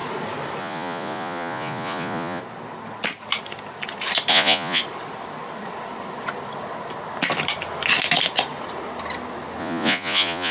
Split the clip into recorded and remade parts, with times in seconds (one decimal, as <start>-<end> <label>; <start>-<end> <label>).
0.0-0.6 recorded; 0.6-2.4 remade; 2.4-4.3 recorded; 4.3-4.8 remade; 4.8-9.6 recorded; 9.6-10.5 remade